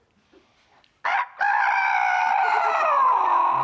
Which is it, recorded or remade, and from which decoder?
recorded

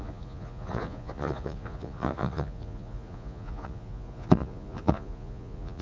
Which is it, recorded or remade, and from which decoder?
remade, vocoder, Vocos